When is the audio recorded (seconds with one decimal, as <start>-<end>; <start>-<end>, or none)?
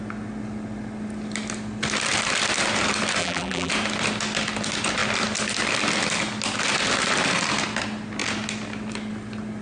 0.0-3.2; 3.7-9.6